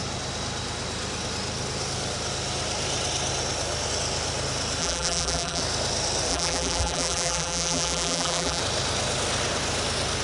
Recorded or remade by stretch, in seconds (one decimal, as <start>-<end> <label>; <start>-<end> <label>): 0.0-4.8 recorded; 4.8-5.6 remade; 5.6-6.3 recorded; 6.3-8.6 remade; 8.6-10.2 recorded